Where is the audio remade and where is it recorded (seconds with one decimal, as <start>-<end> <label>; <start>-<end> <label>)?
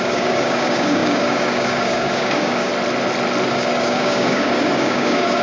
0.0-2.7 remade; 2.7-3.5 recorded; 3.5-5.4 remade